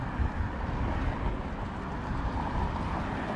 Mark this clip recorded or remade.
recorded